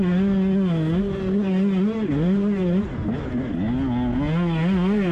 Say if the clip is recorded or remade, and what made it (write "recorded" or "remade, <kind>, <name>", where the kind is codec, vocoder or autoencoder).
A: recorded